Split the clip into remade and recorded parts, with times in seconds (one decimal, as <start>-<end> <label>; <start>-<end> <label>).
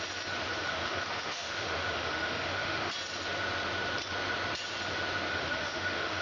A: 0.0-0.6 recorded; 0.6-2.9 remade; 2.9-5.3 recorded; 5.3-6.2 remade